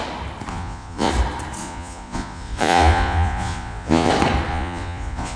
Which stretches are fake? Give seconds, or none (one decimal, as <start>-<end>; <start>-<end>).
0.5-1.1; 1.6-4.1; 4.5-5.4